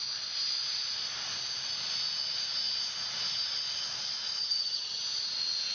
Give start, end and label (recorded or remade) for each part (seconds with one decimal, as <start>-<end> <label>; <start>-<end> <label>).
0.0-4.4 recorded; 4.4-5.0 remade; 5.0-5.7 recorded